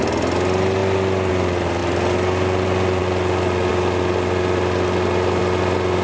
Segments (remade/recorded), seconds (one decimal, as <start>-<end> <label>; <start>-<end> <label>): 0.0-6.0 recorded